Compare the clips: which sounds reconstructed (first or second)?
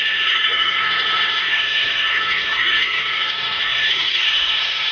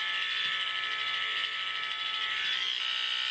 first